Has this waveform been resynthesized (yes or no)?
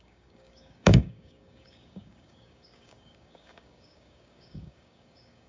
yes